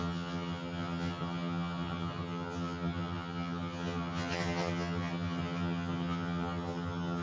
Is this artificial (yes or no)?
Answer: yes